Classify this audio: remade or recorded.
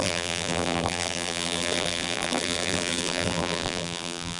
remade